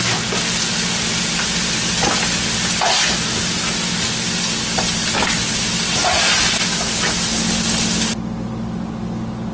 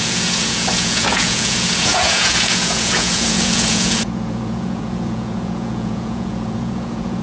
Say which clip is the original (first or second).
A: first